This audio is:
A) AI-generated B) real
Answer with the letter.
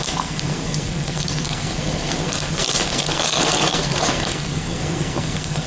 A